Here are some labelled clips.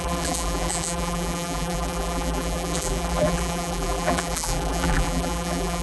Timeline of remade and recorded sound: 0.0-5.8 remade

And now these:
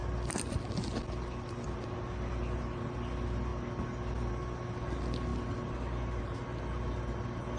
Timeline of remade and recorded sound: 0.0-7.6 recorded

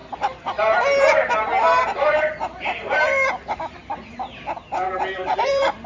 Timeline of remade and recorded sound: 0.0-1.8 recorded; 1.8-5.9 remade

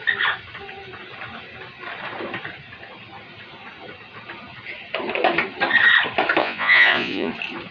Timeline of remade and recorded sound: 0.0-6.4 recorded; 6.4-7.3 remade; 7.3-7.7 recorded